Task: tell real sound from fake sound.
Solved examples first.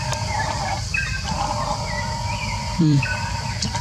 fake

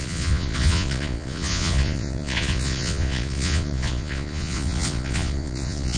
fake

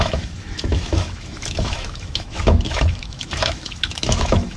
fake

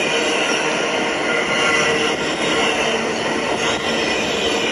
real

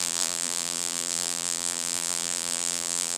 fake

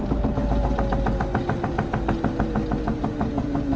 real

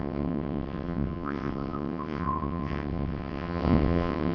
fake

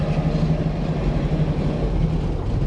real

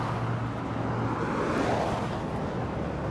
real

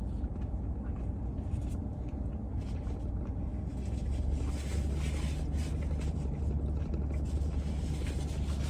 real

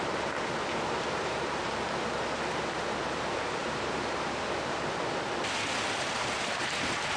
real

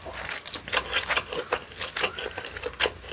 real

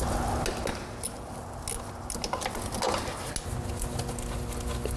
real